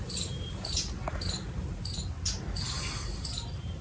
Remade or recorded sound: recorded